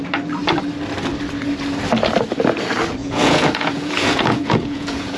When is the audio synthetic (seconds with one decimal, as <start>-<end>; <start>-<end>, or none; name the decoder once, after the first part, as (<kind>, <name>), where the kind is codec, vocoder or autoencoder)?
3.0-5.2 (vocoder, Vocos)